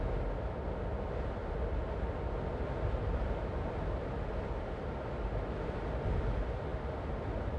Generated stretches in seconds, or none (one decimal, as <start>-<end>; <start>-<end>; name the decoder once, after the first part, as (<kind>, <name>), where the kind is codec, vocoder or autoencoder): none